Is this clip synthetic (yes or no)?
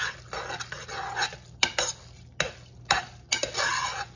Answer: no